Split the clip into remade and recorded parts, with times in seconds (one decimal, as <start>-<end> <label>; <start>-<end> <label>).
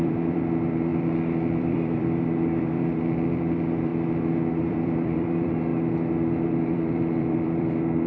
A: 0.0-3.9 remade; 3.9-4.6 recorded; 4.6-5.7 remade; 5.7-6.4 recorded; 6.4-8.1 remade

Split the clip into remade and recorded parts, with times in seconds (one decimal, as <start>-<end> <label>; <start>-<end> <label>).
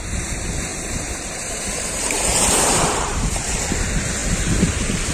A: 0.0-0.7 recorded; 0.7-3.6 remade; 3.6-5.1 recorded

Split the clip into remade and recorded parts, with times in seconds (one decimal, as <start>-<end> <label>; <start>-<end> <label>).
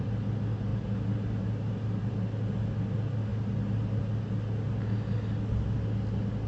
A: 0.0-6.5 recorded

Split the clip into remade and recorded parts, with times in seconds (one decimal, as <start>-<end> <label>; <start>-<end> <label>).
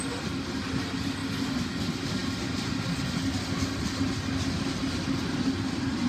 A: 0.0-6.1 recorded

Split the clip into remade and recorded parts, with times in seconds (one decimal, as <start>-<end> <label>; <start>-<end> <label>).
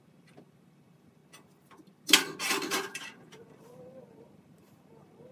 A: 0.0-1.2 remade; 1.2-2.7 recorded; 2.7-5.3 remade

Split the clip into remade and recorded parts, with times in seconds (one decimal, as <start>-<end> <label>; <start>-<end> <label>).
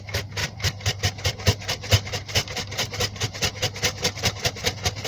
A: 0.0-0.4 recorded; 0.4-1.0 remade; 1.0-1.9 recorded; 1.9-3.5 remade; 3.5-5.1 recorded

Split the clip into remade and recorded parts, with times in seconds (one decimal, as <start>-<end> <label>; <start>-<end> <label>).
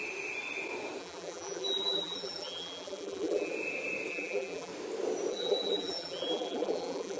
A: 0.0-1.0 recorded; 1.0-3.5 remade; 3.5-4.1 recorded; 4.1-4.7 remade; 4.7-5.3 recorded; 5.3-7.2 remade